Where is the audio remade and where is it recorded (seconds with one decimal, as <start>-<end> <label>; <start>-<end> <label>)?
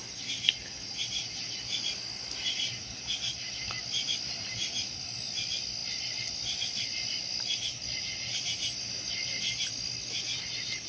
0.0-10.9 recorded